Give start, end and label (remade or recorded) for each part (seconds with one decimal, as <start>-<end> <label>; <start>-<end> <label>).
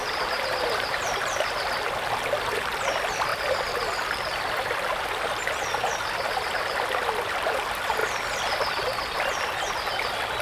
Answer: 0.0-1.2 remade; 1.2-10.4 recorded